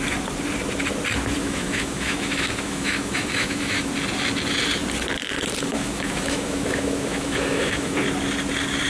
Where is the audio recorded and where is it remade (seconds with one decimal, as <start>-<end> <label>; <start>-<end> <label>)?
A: 0.0-1.4 recorded; 1.4-3.9 remade; 3.9-5.7 recorded; 5.7-8.0 remade; 8.0-8.9 recorded